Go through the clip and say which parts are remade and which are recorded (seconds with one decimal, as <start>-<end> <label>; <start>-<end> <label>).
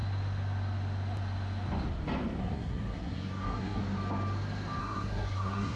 0.0-2.4 recorded; 2.4-3.8 remade; 3.8-4.8 recorded; 4.8-5.8 remade